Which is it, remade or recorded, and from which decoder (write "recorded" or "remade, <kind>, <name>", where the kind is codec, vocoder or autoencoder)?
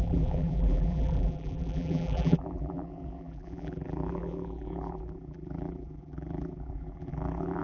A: remade, vocoder, BigVGAN v2